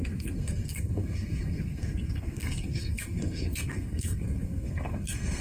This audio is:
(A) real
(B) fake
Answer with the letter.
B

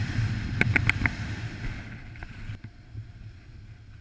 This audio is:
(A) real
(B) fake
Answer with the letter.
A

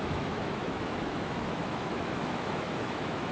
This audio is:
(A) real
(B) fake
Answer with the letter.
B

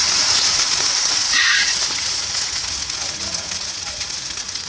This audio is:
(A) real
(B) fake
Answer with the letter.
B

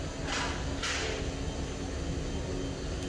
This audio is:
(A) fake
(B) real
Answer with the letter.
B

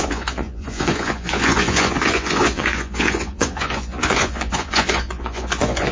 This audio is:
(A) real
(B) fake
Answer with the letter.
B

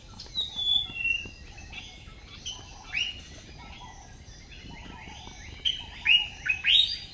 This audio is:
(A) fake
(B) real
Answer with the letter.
B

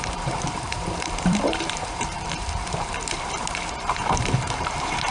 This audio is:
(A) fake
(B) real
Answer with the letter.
A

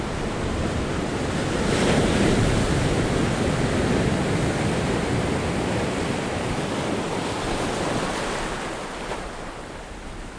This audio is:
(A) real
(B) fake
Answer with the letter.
A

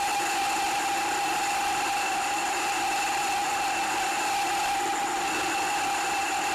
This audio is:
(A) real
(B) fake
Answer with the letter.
A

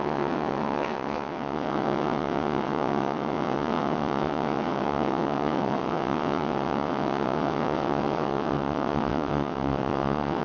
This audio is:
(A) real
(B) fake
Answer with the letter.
B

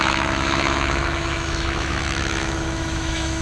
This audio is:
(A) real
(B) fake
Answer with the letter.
B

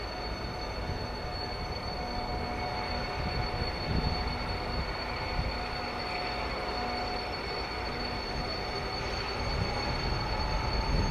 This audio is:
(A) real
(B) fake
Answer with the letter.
A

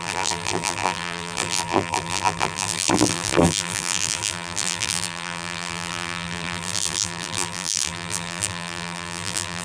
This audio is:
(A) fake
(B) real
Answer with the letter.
A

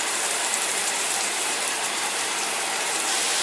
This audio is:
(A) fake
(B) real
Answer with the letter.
A